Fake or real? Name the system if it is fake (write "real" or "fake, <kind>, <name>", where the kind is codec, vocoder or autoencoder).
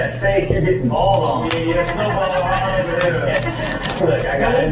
real